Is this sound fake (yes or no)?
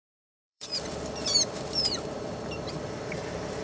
yes